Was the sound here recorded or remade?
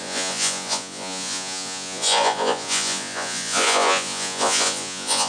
remade